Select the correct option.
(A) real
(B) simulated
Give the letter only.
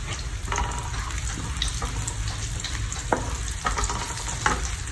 A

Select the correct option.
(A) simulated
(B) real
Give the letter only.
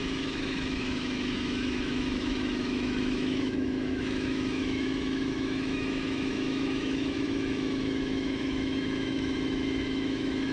A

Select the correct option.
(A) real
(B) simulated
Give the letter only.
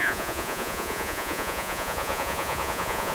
B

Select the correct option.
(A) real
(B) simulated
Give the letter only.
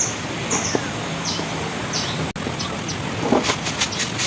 A